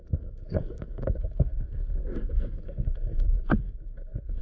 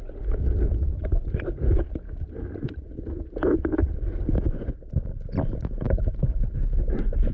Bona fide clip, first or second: second